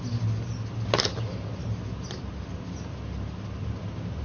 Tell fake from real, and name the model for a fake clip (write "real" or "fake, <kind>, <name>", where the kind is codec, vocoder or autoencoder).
real